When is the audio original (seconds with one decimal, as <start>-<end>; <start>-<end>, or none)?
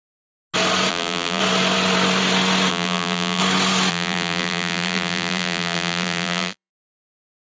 0.0-0.9; 1.4-2.7; 3.4-3.9; 6.7-7.5